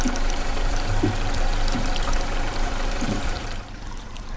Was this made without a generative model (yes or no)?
no